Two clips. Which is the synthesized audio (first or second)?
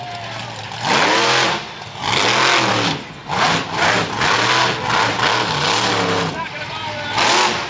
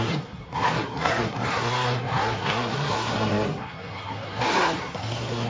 second